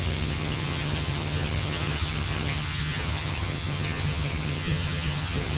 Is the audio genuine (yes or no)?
no